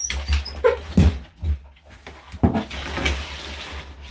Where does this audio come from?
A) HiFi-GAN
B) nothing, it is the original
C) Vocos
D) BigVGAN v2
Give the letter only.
B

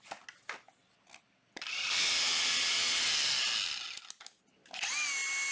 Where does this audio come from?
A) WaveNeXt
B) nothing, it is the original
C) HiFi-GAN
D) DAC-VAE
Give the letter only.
B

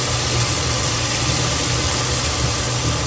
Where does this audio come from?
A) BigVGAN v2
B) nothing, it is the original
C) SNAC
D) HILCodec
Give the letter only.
A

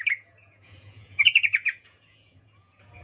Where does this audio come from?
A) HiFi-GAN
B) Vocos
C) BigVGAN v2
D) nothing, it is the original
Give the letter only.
B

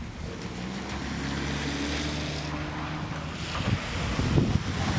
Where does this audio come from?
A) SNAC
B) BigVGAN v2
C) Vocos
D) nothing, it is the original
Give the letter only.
D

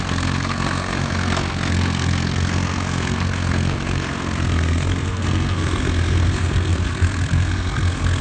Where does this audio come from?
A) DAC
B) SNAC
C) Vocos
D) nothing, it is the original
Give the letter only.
B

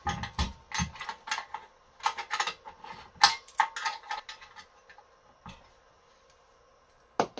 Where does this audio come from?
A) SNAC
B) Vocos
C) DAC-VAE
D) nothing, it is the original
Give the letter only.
D